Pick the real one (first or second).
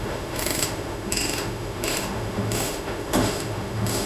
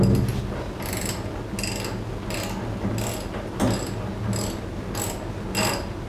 second